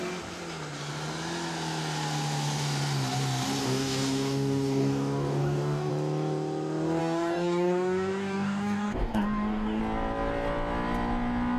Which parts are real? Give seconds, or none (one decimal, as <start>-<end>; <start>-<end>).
0.0-3.6; 5.9-7.0; 9.8-11.6